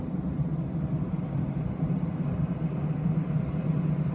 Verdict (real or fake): real